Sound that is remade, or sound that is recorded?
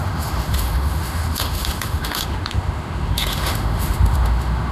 remade